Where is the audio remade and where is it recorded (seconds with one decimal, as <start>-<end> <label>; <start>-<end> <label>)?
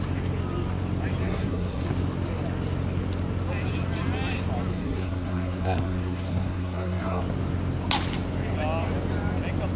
0.0-1.2 recorded; 1.2-1.9 remade; 1.9-4.7 recorded; 4.7-7.2 remade; 7.2-9.8 recorded